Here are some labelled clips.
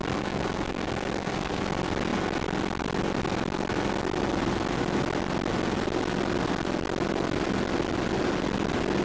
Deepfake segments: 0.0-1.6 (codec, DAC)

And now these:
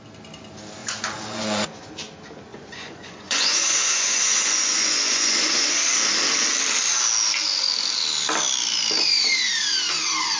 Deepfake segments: 0.8-1.9 (vocoder, Vocos); 2.5-5.9

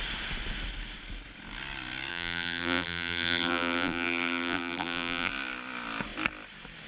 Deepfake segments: 2.1-5.3 (vocoder, BigVGAN v2)

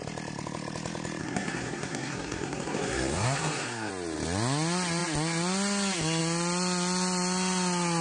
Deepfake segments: 1.2-3.9 (codec, SNAC)

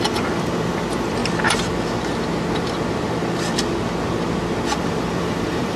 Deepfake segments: 0.0-1.2 (vocoder, BigVGAN v2); 4.7-5.8